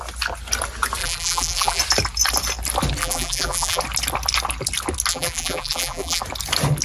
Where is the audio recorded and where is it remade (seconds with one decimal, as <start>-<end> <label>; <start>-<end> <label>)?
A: 0.0-1.0 recorded; 1.0-1.8 remade; 1.8-3.0 recorded; 3.0-3.8 remade; 3.8-5.1 recorded; 5.1-6.2 remade; 6.2-6.8 recorded